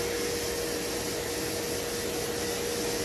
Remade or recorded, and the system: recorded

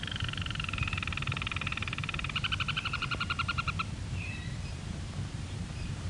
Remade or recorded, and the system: remade, vocoder, BigVGAN v2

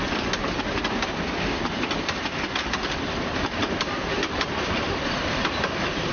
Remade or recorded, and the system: remade, vocoder, BigVGAN v2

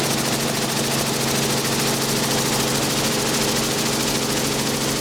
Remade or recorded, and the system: recorded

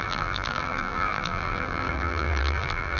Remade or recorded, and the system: remade, vocoder, BigVGAN v2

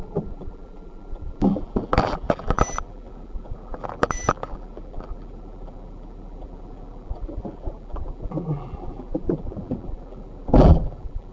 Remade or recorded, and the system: remade, vocoder, BigVGAN v2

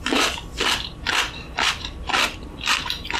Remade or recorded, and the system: remade, vocoder, BigVGAN v2